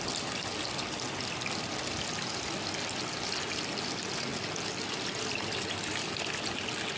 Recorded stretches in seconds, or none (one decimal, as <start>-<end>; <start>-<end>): 0.0-7.0